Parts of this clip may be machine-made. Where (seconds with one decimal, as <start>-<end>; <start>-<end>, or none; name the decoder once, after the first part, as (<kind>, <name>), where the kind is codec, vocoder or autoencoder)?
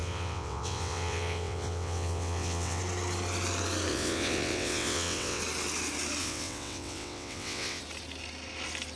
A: 0.0-2.8 (vocoder, WaveNeXt); 3.9-5.4; 6.2-7.8